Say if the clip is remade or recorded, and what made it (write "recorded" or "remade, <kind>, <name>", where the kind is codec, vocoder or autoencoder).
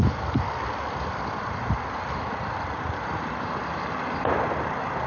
recorded